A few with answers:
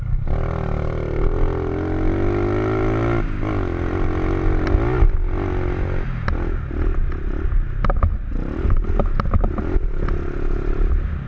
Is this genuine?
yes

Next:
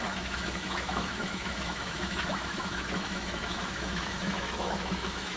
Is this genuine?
no